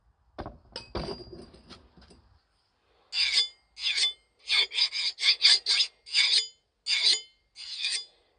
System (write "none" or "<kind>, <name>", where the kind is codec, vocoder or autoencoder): none